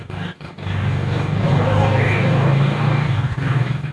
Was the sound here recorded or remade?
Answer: remade